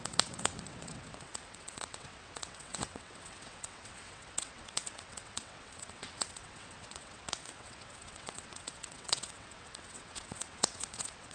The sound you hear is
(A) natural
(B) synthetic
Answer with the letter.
B